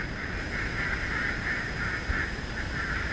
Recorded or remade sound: recorded